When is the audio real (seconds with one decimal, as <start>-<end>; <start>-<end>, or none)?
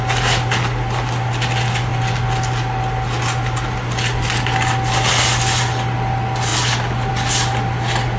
0.0-8.2